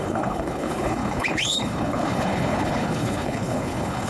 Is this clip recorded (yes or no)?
no